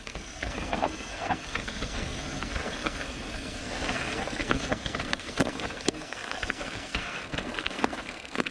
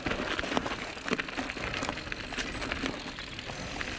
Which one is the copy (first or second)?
first